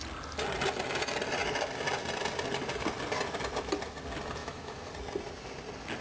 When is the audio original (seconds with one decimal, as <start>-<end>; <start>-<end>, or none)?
0.0-4.4; 4.9-6.0